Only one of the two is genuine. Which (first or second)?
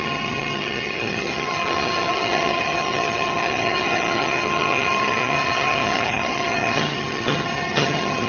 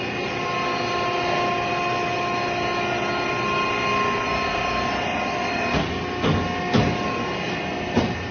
second